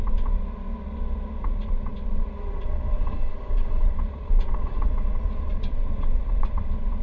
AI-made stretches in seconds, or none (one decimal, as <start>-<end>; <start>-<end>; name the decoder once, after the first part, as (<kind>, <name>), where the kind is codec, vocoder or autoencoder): 0.0-7.0 (vocoder, Vocos)